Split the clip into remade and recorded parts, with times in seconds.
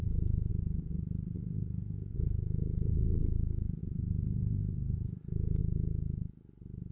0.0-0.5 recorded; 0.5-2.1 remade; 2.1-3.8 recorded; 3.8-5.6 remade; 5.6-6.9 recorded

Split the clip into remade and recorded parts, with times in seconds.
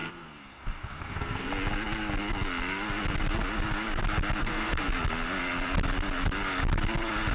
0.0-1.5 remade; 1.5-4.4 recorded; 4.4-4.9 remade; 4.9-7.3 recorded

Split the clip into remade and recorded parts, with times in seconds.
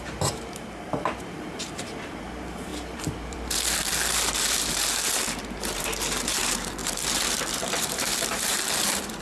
0.0-9.2 remade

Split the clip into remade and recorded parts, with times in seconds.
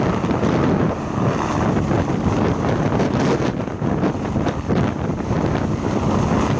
0.0-0.8 recorded; 0.8-1.5 remade; 1.5-2.0 recorded; 2.0-3.9 remade; 3.9-6.6 recorded